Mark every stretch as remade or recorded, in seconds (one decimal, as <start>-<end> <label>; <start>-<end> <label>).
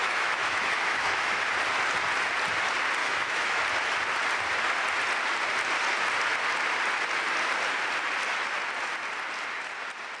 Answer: 0.0-1.5 remade; 1.5-3.0 recorded; 3.0-3.6 remade; 3.6-10.2 recorded